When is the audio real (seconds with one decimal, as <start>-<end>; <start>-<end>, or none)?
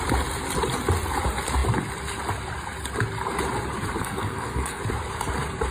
0.0-4.0; 4.8-5.7